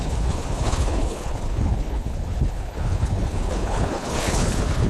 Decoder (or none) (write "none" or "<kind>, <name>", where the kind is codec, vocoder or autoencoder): codec, HILCodec